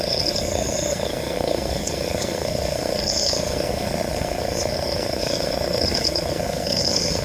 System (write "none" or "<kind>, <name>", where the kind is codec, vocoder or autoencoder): codec, SNAC